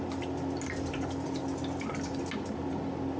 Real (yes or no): yes